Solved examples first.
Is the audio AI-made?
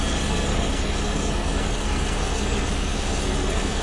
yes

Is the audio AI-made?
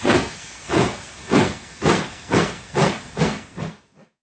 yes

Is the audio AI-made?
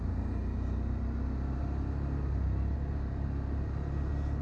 no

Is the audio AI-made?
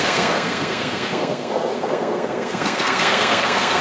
yes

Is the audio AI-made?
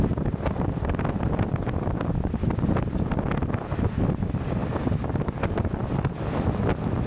no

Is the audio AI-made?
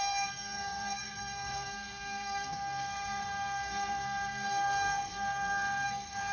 yes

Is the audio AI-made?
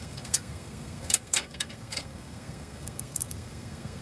yes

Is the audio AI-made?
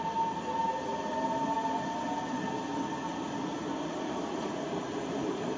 no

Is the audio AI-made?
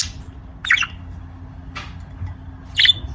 no